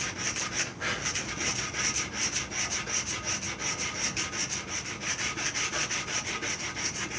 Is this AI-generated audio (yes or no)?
no